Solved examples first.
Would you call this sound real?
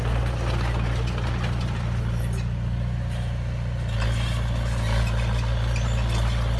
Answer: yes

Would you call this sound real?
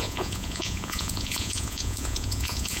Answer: no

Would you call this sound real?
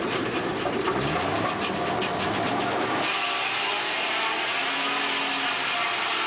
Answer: yes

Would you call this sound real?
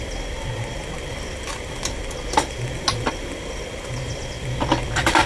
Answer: yes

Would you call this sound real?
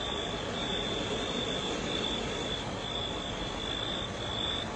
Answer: no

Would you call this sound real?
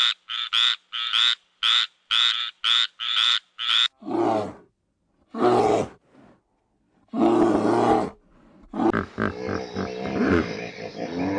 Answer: yes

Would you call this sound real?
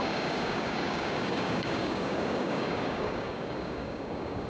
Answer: no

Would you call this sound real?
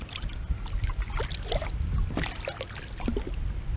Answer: yes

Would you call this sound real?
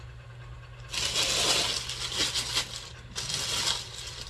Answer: yes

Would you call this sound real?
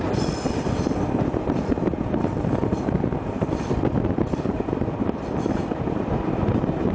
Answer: no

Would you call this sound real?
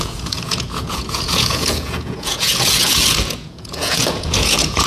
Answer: no